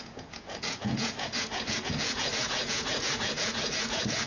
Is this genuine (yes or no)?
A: no